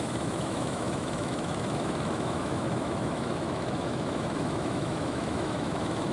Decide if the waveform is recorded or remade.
remade